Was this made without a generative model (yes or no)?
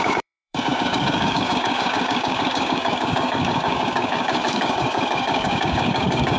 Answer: no